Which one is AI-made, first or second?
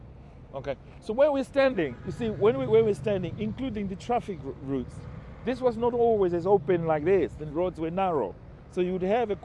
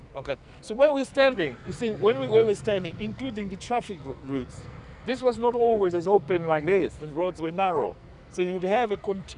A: second